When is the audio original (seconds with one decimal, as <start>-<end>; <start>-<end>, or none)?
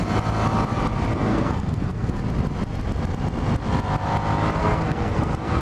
0.0-1.3; 2.2-4.6